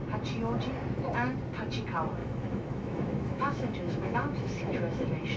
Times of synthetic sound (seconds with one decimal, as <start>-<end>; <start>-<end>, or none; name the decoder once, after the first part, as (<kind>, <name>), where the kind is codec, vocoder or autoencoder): 2.2-5.4 (autoencoder, DAC-VAE)